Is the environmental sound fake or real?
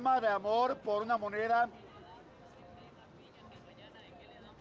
real